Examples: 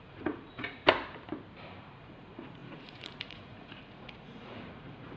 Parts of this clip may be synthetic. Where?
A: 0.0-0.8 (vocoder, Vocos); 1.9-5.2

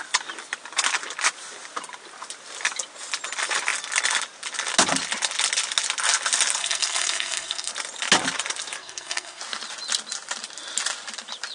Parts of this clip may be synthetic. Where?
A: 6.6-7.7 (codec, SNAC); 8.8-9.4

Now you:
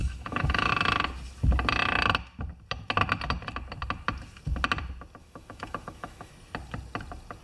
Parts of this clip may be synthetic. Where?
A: 0.0-0.7 (autoencoder, DAC-VAE); 5.2-6.3

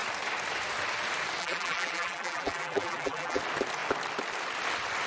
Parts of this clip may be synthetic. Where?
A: 1.4-3.4 (vocoder, BigVGAN v2)